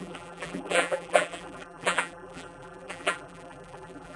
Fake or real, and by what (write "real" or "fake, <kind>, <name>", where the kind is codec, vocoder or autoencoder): fake, vocoder, BigVGAN v2